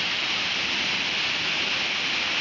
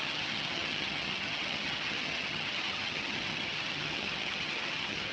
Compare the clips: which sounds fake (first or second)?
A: second